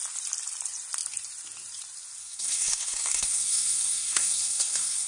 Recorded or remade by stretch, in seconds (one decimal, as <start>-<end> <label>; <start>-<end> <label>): 0.0-2.2 recorded; 2.2-5.1 remade